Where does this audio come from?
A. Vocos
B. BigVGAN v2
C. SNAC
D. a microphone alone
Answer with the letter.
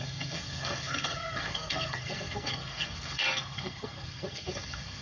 C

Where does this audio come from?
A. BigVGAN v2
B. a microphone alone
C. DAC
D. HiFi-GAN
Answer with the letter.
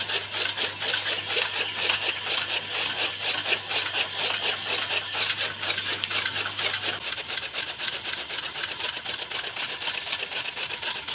B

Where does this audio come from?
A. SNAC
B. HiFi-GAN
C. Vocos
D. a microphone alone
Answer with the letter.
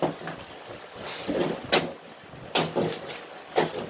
D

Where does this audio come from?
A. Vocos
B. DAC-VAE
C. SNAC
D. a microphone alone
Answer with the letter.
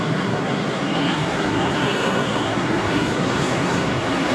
C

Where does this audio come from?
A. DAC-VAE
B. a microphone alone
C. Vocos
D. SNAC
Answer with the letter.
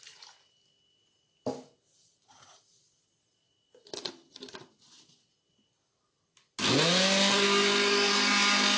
B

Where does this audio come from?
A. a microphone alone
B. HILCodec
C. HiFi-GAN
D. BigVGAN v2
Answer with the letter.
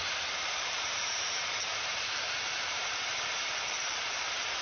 D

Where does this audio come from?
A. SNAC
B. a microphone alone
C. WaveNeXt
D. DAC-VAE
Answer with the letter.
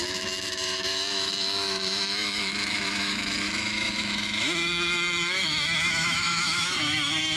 D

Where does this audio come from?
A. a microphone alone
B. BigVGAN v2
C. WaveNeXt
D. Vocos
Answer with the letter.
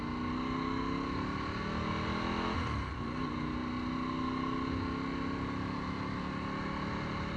A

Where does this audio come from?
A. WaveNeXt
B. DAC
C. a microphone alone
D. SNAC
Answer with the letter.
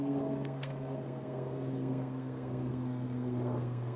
D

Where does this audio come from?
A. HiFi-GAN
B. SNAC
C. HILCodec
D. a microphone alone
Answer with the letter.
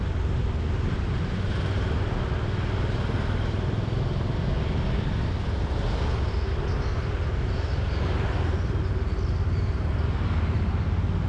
D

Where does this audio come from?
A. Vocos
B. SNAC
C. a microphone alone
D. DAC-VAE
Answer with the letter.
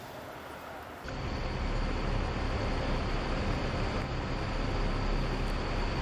C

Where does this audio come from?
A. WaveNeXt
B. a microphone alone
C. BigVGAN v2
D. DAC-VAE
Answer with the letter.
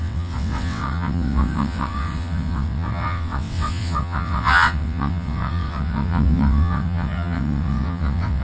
A